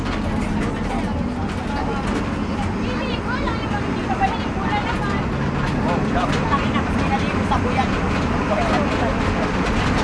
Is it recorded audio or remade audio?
recorded